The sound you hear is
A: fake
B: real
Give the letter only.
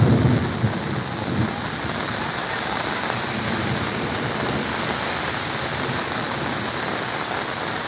B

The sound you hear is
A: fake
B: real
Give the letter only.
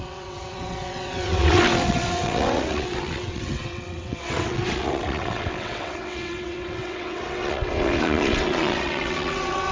A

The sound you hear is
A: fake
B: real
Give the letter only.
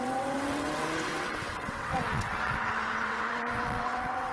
A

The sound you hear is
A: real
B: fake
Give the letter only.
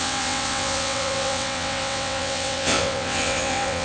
B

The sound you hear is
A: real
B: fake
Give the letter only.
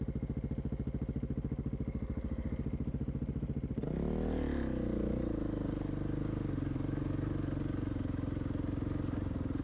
A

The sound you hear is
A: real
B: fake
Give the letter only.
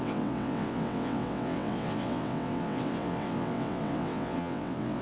B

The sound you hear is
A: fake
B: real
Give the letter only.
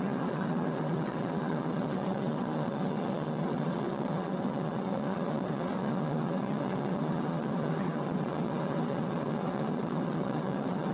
A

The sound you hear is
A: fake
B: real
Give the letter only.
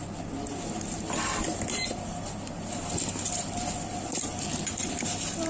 B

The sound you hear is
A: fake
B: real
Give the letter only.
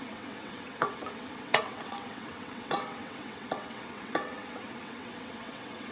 A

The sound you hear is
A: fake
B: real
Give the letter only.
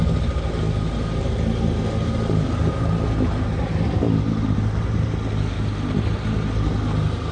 B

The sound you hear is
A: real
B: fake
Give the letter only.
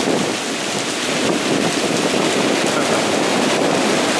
A